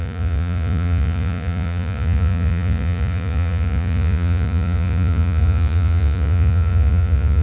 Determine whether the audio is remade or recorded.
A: remade